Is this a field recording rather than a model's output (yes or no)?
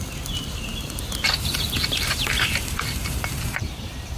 no